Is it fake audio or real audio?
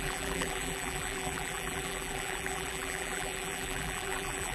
fake